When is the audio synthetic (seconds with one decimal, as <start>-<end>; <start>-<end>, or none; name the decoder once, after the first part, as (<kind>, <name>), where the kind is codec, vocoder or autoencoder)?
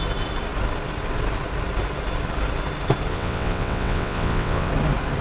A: 3.1-4.7 (vocoder, WaveNeXt)